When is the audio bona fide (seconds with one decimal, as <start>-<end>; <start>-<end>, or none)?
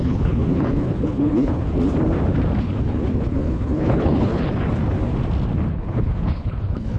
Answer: 1.7-2.6; 4.4-5.7